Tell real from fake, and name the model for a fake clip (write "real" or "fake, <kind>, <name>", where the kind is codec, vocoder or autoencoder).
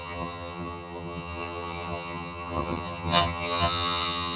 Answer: fake, vocoder, HiFi-GAN